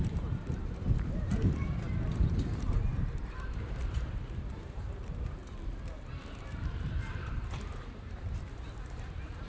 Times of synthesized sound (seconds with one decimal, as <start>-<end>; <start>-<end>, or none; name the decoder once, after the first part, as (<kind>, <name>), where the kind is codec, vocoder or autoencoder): 0.0-5.4 (vocoder, BigVGAN v2); 6.6-9.5